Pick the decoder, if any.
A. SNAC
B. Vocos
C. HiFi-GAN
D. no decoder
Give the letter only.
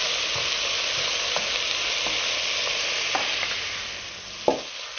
D